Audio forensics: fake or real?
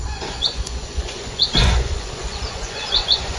fake